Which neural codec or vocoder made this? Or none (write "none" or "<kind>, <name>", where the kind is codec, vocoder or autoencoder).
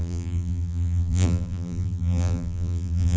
vocoder, BigVGAN v2